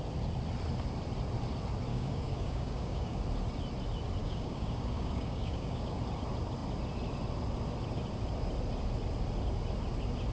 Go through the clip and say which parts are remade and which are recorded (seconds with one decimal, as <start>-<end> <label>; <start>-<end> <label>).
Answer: 0.0-1.9 recorded; 1.9-3.2 remade; 3.2-4.2 recorded; 4.2-6.0 remade; 6.0-10.3 recorded

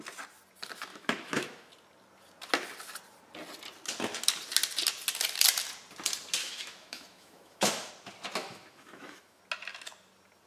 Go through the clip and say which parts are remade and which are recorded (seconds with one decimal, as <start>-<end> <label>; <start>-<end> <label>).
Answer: 0.0-0.9 recorded; 0.9-1.7 remade; 1.7-6.4 recorded; 6.4-7.9 remade; 7.9-8.4 recorded; 8.4-9.4 remade; 9.4-10.5 recorded

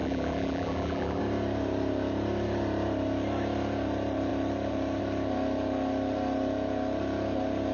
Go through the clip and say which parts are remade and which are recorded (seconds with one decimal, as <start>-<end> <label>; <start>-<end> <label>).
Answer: 0.0-1.2 remade; 1.2-7.7 recorded

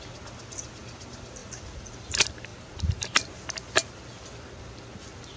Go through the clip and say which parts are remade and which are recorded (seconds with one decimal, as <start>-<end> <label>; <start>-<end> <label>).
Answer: 0.0-5.4 recorded